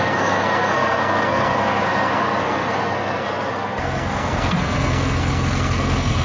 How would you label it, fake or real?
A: fake